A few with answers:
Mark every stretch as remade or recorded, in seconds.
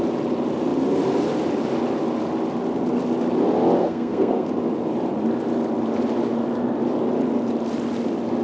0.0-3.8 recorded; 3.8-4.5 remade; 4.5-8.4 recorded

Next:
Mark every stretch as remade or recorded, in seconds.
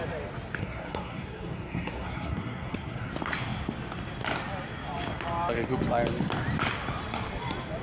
0.0-0.6 recorded; 0.6-3.1 remade; 3.1-7.8 recorded